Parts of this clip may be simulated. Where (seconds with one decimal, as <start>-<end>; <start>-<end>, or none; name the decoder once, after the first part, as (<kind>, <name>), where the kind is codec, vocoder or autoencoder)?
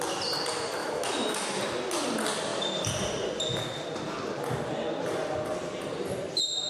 0.8-1.6 (autoencoder, DAC-VAE)